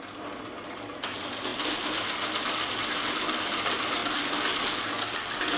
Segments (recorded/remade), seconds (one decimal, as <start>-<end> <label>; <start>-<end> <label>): 0.0-5.6 recorded

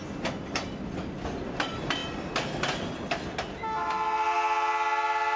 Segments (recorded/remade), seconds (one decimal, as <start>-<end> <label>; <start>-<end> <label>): 0.0-5.4 recorded